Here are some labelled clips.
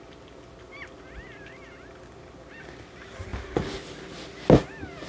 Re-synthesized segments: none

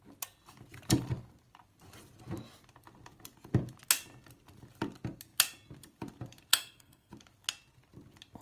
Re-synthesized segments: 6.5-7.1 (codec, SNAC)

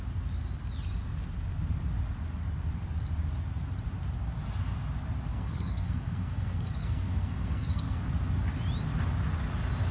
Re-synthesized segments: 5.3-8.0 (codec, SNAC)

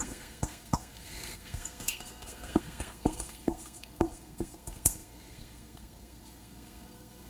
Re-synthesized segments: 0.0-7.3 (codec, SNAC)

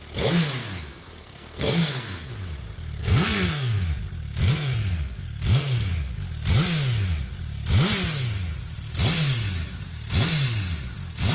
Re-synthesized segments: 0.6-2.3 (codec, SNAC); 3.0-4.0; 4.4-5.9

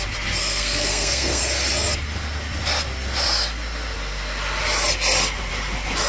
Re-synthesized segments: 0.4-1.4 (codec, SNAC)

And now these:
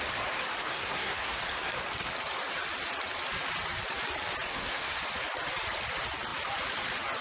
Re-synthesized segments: 0.7-1.4 (codec, SNAC); 4.5-5.0